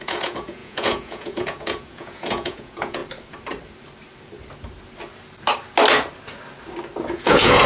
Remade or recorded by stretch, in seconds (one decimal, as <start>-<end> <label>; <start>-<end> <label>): 0.0-3.0 remade; 3.0-7.1 recorded; 7.1-7.7 remade